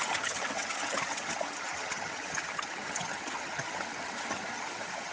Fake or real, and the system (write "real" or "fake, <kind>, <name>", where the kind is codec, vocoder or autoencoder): fake, vocoder, HiFi-GAN